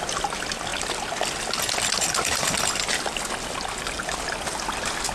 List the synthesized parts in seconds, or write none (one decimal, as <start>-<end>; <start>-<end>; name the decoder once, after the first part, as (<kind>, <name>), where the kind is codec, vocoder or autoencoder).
none